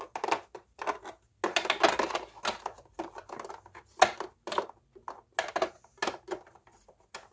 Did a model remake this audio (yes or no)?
no